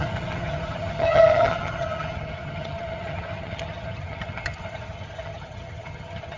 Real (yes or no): no